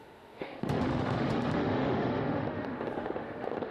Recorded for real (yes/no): no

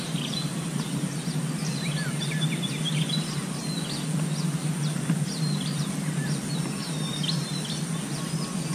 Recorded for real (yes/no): yes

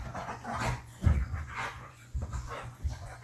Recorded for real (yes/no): no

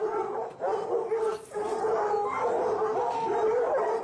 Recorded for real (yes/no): yes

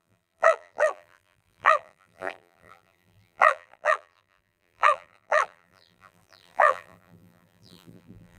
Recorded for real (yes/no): no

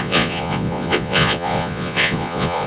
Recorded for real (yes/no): no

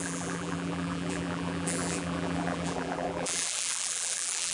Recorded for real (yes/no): no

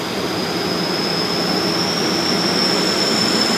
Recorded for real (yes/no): yes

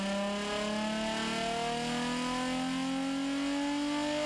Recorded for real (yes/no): yes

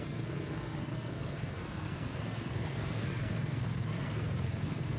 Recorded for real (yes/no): no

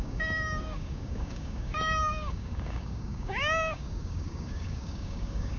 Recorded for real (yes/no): no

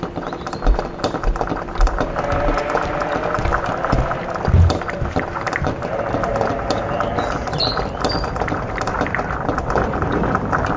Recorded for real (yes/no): yes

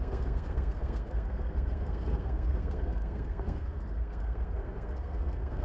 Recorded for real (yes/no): no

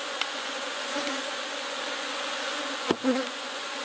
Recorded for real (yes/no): no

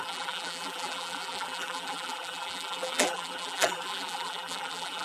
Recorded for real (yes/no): no